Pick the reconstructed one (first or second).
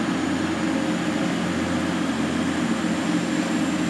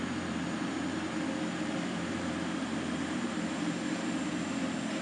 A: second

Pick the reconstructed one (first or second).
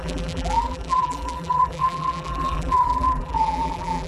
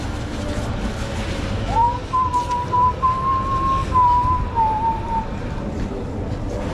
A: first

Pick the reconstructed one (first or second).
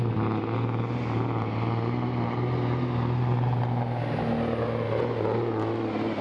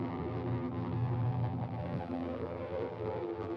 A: second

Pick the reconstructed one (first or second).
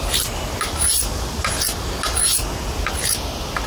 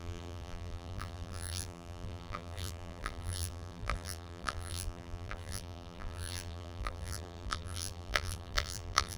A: second